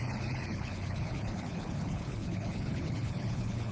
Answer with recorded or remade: remade